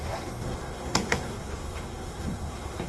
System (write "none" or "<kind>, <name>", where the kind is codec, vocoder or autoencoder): codec, SNAC